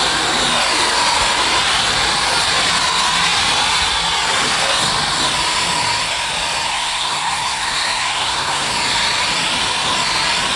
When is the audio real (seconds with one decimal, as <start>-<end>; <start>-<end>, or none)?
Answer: 0.0-6.7; 8.7-10.6